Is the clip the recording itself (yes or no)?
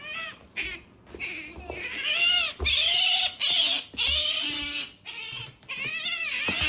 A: yes